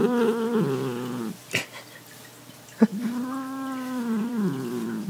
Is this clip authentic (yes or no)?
no